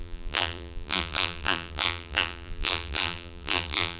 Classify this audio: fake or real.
fake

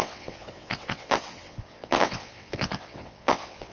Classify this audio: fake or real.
fake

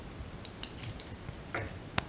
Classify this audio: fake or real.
fake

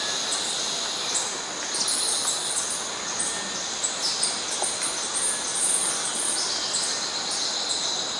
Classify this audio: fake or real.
real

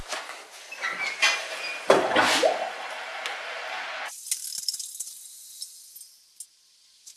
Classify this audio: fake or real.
real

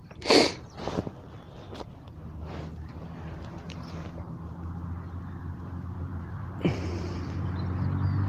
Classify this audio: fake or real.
real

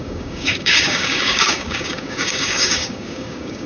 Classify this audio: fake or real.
fake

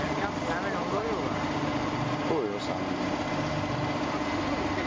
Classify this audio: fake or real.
real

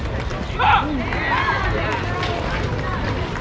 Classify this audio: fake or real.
real